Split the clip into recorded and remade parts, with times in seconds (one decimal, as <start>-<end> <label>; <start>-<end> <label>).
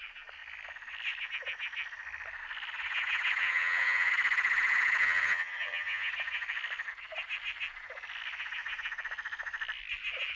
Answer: 0.0-3.4 recorded; 3.4-4.1 remade; 4.1-5.0 recorded; 5.0-6.1 remade; 6.1-10.4 recorded